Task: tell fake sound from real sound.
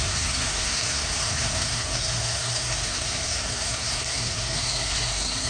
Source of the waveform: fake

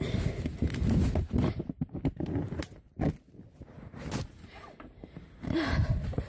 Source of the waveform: real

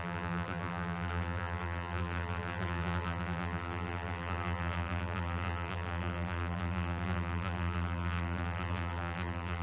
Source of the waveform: fake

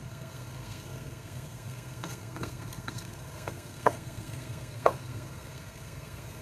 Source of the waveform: fake